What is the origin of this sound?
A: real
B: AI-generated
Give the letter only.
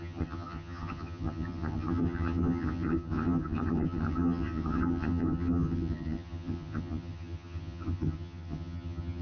B